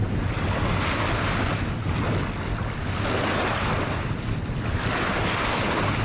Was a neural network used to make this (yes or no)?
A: no